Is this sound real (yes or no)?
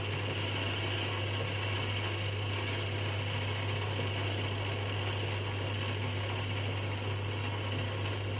yes